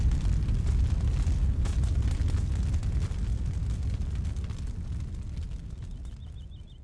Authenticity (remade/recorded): recorded